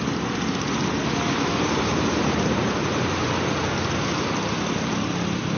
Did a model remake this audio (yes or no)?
no